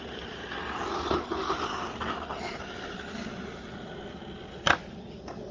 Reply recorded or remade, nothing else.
recorded